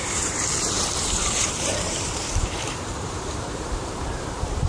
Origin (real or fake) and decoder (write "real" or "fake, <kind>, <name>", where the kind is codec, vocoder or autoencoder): fake, vocoder, BigVGAN v2